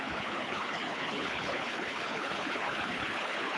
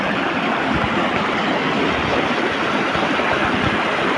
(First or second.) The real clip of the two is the second